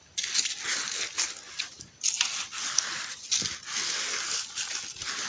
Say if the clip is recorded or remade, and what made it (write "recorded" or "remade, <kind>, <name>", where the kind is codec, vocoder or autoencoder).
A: recorded